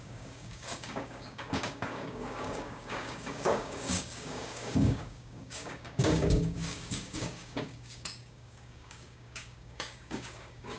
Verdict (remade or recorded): remade